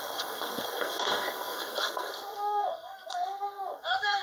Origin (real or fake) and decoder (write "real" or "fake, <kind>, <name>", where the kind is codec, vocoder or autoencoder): fake, codec, SNAC